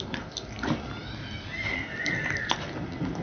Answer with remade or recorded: recorded